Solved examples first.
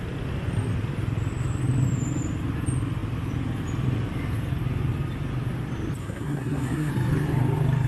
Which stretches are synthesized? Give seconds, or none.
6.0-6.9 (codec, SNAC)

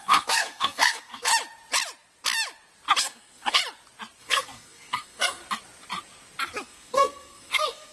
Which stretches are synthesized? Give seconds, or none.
0.0-1.3 (codec, SNAC); 3.0-3.6; 4.2-5.4; 6.6-7.9

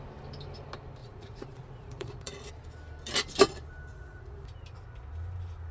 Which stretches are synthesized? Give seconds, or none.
1.0-2.5 (vocoder, Vocos); 3.9-4.4

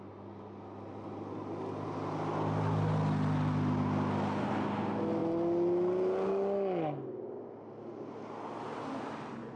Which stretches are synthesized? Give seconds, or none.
none

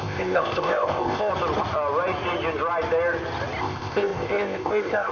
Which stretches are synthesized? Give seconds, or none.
0.0-1.3 (codec, ZipCodec); 3.6-5.1